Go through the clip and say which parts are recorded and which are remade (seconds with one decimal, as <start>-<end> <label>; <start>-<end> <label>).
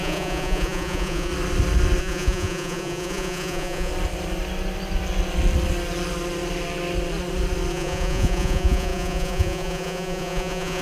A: 0.0-1.3 remade; 1.3-2.0 recorded; 2.0-3.9 remade; 3.9-7.7 recorded; 7.7-10.8 remade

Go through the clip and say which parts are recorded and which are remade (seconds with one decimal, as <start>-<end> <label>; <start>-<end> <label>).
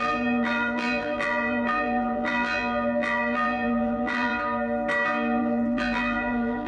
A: 0.0-4.3 remade; 4.3-5.4 recorded; 5.4-6.7 remade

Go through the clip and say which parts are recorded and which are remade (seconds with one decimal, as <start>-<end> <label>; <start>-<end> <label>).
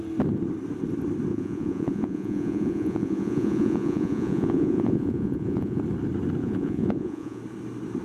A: 0.0-1.3 recorded; 1.3-5.8 remade; 5.8-6.4 recorded; 6.4-7.4 remade; 7.4-8.0 recorded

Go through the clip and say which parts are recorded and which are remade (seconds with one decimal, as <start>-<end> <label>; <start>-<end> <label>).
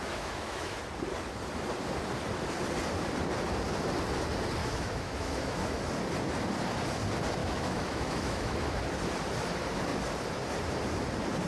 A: 0.0-0.8 remade; 0.8-4.6 recorded; 4.6-5.8 remade; 5.8-7.4 recorded; 7.4-8.8 remade; 8.8-11.5 recorded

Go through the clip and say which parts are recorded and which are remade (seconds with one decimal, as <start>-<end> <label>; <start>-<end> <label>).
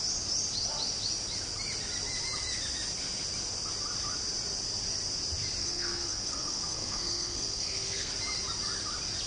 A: 0.0-5.6 recorded; 5.6-8.1 remade; 8.1-9.3 recorded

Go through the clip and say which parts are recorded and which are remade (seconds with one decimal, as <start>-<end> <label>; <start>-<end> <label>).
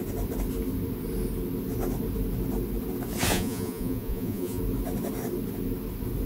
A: 0.0-3.3 recorded; 3.3-4.6 remade; 4.6-6.3 recorded